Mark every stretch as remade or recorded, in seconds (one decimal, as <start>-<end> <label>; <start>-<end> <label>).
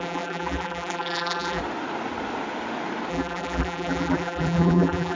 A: 0.0-1.6 remade; 1.6-3.1 recorded; 3.1-5.2 remade